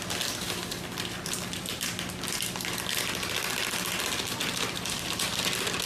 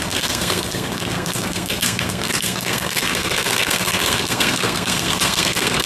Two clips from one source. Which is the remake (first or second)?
second